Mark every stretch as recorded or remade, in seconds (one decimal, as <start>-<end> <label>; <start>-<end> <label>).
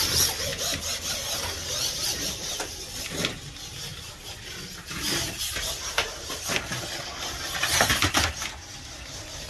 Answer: 0.0-9.5 recorded